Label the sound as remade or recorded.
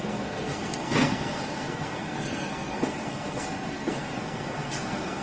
remade